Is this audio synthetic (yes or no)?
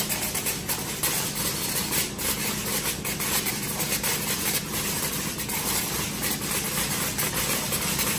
no